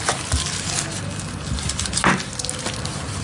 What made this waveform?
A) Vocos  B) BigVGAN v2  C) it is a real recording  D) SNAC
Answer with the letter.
C